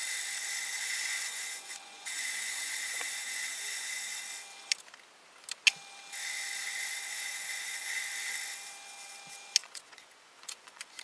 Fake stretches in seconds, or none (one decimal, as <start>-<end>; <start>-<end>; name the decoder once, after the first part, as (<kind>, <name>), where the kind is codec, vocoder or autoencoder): 0.7-4.2 (vocoder, Vocos); 7.1-8.0; 9.6-11.0